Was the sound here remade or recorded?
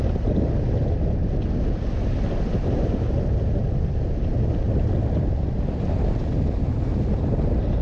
recorded